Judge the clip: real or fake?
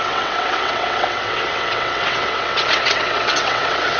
fake